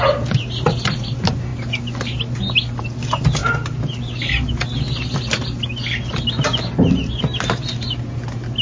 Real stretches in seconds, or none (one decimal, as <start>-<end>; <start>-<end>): 0.0-8.6